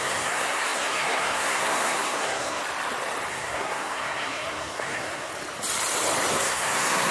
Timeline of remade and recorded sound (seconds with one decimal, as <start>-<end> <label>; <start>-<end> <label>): 0.0-2.6 remade; 2.6-3.3 recorded; 3.3-5.3 remade; 5.3-6.3 recorded; 6.3-7.1 remade